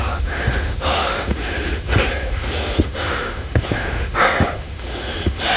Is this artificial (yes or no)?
yes